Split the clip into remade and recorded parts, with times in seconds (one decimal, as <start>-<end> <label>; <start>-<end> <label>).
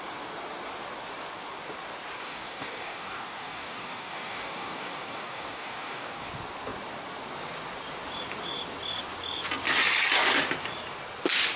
0.0-2.2 recorded; 2.2-6.3 remade; 6.3-11.6 recorded